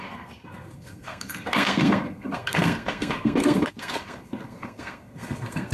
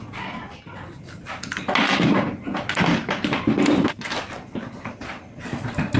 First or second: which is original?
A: second